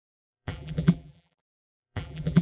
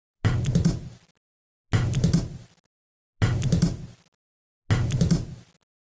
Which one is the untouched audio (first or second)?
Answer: second